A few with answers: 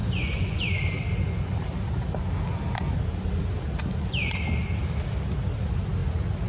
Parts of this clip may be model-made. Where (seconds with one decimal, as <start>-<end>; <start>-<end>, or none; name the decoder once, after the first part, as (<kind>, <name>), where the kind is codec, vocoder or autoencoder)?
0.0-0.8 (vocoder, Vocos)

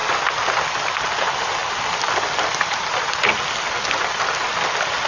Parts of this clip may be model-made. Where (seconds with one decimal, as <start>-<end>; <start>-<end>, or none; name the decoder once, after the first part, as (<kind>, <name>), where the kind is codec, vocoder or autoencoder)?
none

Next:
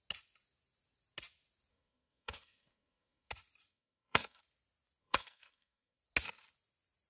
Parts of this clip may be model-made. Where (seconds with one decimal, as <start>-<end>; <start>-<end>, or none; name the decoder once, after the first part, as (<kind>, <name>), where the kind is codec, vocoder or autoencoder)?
1.7-3.3 (codec, SNAC); 3.7-4.4; 5.0-6.0

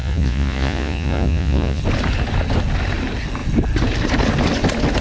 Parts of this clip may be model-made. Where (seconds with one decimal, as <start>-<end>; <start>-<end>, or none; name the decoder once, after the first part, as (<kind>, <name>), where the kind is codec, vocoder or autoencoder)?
0.0-1.8 (vocoder, Vocos)